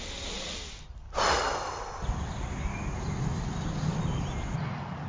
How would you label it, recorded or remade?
recorded